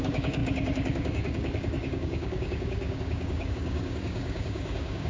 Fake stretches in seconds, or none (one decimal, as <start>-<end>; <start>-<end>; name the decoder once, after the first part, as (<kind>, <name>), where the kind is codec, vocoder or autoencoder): 0.0-5.1 (codec, DAC)